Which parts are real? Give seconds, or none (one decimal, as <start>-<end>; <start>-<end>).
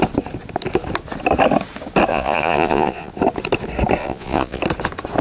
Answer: 0.0-2.1; 3.1-4.0; 4.6-5.2